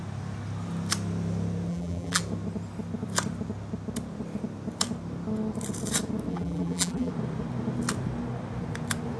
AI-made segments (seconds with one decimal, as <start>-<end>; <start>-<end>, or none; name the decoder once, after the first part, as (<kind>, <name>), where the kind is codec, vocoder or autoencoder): 1.7-2.2 (vocoder, BigVGAN v2); 6.3-7.1